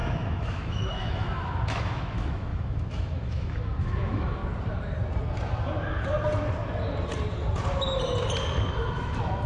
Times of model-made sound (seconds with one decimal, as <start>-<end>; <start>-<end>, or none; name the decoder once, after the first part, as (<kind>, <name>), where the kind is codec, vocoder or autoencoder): 0.0-4.4 (autoencoder, DAC-VAE); 8.7-9.5